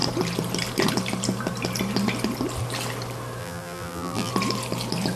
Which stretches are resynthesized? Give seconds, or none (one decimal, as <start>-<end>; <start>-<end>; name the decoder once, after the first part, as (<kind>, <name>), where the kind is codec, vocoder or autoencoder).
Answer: 3.4-4.3 (vocoder, BigVGAN v2)